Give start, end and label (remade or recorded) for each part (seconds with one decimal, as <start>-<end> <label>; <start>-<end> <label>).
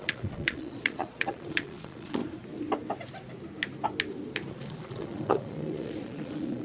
0.0-2.2 remade; 2.2-4.5 recorded; 4.5-6.6 remade